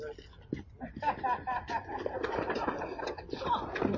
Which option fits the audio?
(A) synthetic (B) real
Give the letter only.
B